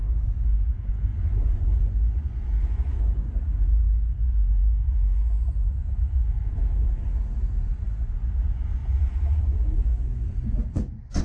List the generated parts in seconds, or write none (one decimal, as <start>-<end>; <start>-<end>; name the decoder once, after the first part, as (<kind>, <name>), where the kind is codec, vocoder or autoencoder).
0.0-6.6 (vocoder, Vocos); 7.6-11.2